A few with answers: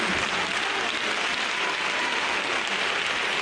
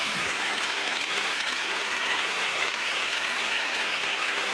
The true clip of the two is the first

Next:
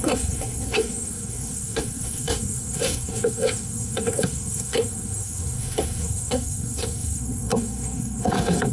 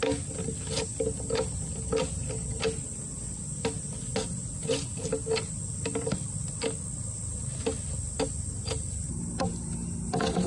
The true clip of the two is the second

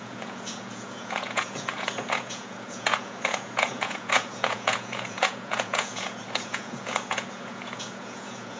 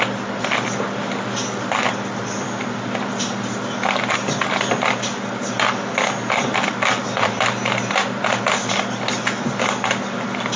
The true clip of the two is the second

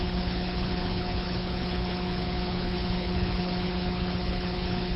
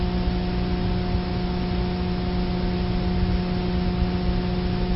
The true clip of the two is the second